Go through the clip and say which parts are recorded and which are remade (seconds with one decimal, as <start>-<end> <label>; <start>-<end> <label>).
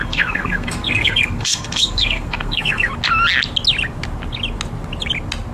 0.0-2.9 remade; 2.9-5.5 recorded